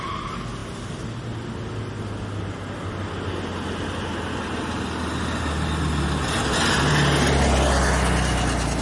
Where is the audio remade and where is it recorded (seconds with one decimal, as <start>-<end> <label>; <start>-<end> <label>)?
0.0-8.8 recorded